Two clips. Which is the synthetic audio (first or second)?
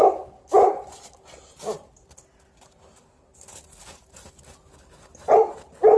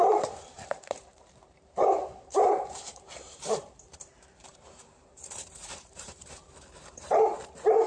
second